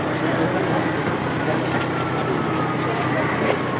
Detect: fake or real real